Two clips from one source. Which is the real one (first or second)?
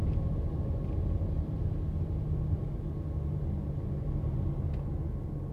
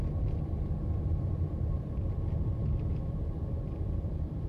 first